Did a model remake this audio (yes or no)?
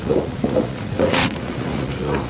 yes